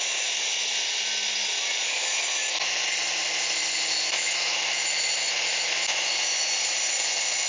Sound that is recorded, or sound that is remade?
recorded